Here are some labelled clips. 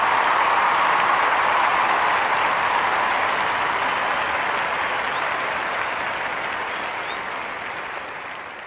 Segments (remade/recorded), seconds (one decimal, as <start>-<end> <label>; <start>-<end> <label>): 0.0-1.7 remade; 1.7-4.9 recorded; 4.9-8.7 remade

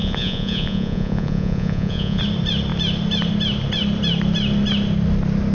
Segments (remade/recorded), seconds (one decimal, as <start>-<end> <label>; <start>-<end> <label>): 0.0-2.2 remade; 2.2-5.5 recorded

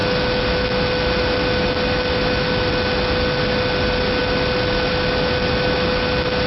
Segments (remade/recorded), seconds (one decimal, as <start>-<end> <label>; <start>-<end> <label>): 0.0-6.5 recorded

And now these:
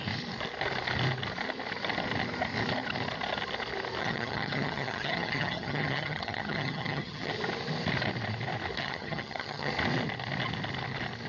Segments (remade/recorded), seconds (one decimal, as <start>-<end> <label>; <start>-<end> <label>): 0.0-4.0 recorded; 4.0-7.3 remade; 7.3-8.8 recorded; 8.8-9.7 remade; 9.7-11.3 recorded

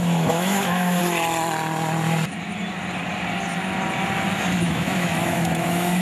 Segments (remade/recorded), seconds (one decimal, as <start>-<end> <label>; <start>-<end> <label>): 0.0-1.0 remade; 1.0-4.6 recorded; 4.6-6.0 remade